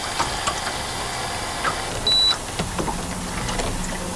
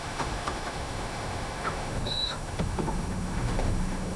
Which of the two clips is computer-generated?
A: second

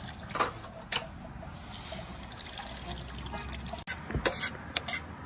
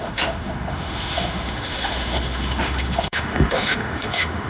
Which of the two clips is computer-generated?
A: second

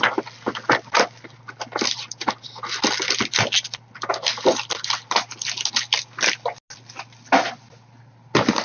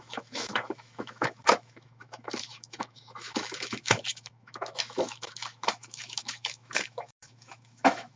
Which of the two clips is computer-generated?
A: second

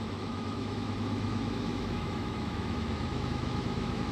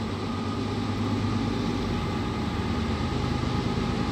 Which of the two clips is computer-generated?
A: first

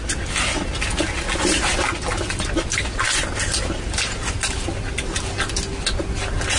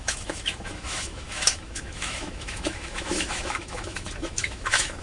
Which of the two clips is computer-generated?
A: second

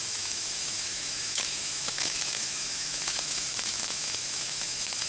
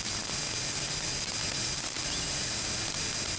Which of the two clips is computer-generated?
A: first